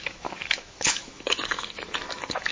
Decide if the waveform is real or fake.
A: fake